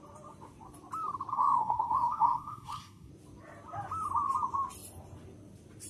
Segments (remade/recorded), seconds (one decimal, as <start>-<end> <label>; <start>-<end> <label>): 0.0-1.3 recorded; 1.3-3.1 remade; 3.1-5.9 recorded